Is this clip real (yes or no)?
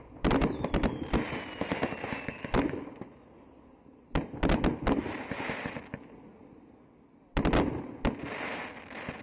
yes